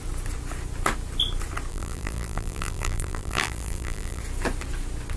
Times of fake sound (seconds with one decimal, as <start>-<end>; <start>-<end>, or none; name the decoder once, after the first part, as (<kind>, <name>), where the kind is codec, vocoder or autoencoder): 1.7-4.2 (vocoder, BigVGAN v2)